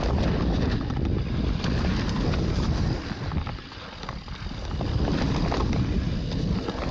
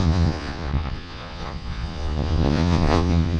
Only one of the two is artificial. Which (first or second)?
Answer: second